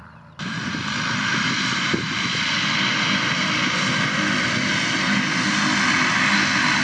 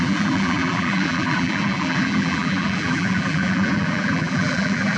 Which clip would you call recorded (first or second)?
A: first